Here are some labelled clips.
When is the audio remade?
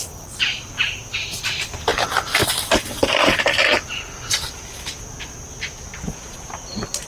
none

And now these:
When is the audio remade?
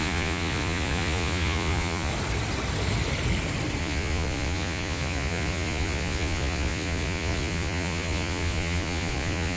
0.0-2.1 (vocoder, Vocos); 3.8-9.6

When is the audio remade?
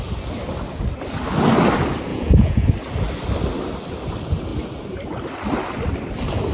2.1-2.7 (vocoder, Vocos)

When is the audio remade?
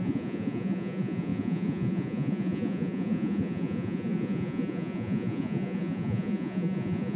0.0-7.2 (vocoder, Vocos)